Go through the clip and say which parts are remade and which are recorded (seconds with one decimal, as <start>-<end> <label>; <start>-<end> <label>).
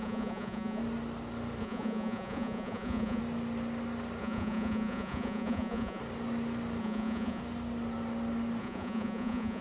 0.0-0.8 remade; 0.8-1.6 recorded; 1.6-3.2 remade; 3.2-4.2 recorded; 4.2-6.0 remade; 6.0-6.8 recorded; 6.8-7.4 remade; 7.4-8.6 recorded; 8.6-9.6 remade